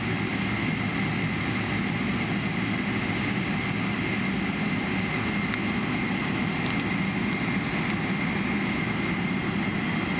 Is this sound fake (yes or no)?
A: no